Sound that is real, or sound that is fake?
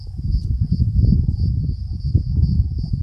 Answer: real